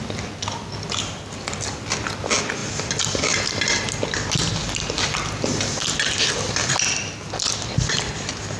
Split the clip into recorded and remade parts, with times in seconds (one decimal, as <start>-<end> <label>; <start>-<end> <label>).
0.0-8.6 recorded